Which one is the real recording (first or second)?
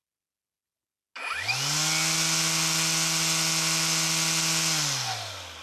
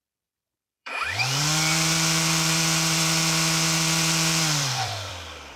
first